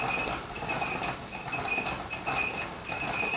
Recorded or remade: recorded